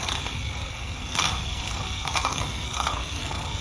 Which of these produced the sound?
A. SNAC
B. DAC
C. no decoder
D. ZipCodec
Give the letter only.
A